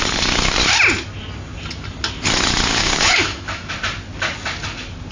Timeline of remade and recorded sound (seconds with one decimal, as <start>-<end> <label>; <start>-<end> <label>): 0.0-2.8 recorded; 2.8-3.7 remade; 3.7-5.1 recorded